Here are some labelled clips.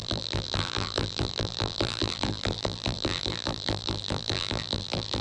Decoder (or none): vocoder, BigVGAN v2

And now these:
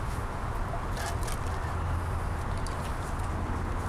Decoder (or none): none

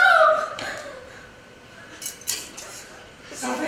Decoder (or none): vocoder, BigVGAN v2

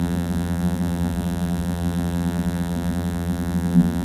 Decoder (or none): vocoder, BigVGAN v2